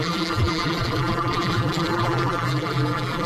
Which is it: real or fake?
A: fake